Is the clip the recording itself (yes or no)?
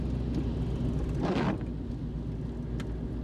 yes